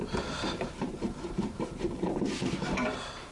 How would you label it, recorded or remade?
remade